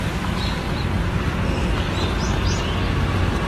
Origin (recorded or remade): recorded